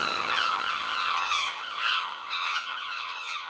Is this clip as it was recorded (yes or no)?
no